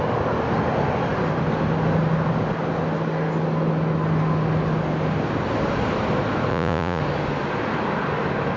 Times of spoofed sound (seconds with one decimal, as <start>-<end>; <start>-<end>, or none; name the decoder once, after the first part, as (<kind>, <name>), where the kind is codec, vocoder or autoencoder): 6.5-7.0 (vocoder, Vocos)